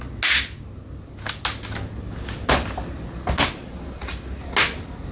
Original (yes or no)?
yes